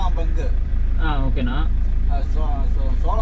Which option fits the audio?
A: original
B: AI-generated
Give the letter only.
B